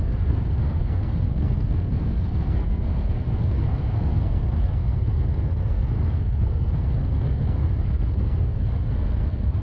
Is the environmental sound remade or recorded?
remade